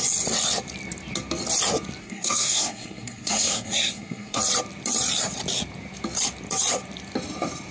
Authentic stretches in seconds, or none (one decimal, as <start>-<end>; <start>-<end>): 0.0-2.0; 4.4-7.7